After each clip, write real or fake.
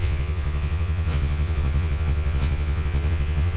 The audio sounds fake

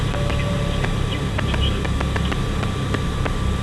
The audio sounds real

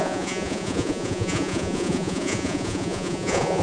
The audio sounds fake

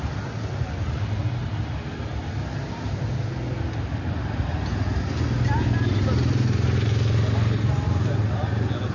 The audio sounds real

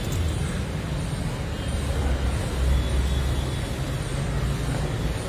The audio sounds real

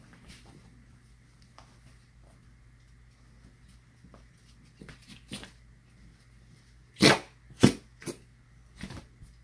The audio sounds real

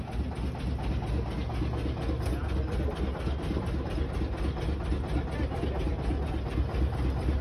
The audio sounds real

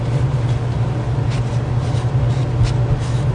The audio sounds real